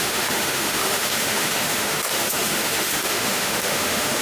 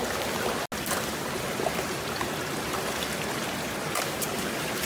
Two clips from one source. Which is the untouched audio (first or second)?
second